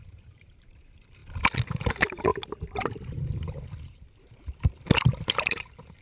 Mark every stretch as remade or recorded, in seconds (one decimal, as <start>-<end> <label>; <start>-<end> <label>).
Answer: 0.0-1.2 remade; 1.2-1.9 recorded; 1.9-2.3 remade; 2.3-5.4 recorded; 5.4-6.0 remade

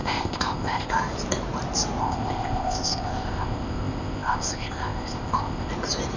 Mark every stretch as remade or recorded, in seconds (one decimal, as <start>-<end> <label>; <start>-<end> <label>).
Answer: 0.0-0.9 remade; 0.9-2.0 recorded; 2.0-5.7 remade; 5.7-6.2 recorded

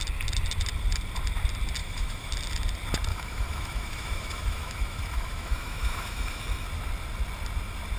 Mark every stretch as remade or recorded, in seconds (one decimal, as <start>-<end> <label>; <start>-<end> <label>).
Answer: 0.0-1.8 recorded; 1.8-2.3 remade; 2.3-3.1 recorded; 3.1-6.4 remade; 6.4-8.0 recorded